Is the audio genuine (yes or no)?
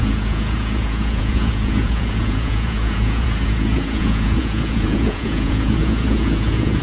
no